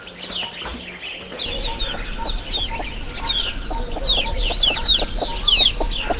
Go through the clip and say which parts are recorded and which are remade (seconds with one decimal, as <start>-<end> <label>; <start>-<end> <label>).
0.0-6.2 recorded